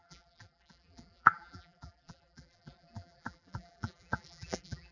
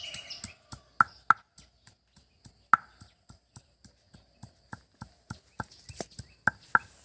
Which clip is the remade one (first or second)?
first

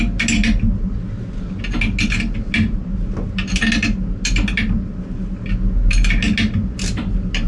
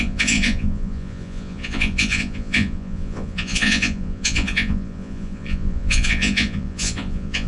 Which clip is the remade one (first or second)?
second